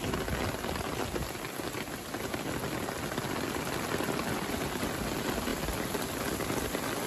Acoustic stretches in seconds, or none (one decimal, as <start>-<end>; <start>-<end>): 0.0-7.1